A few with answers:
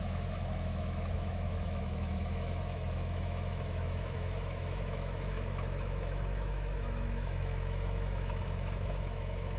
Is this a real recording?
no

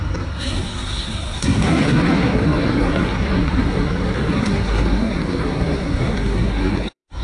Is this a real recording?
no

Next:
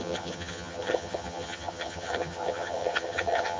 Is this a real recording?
no